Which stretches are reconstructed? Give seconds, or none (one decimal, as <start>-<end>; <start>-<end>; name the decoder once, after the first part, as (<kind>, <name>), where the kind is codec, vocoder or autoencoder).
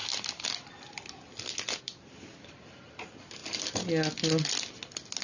none